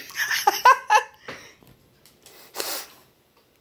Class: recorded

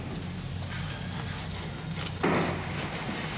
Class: recorded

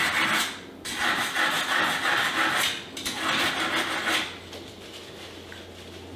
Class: recorded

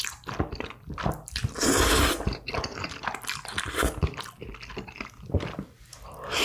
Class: remade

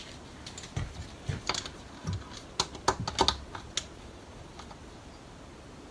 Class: recorded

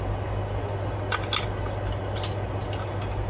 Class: recorded